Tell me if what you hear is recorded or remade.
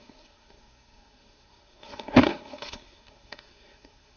remade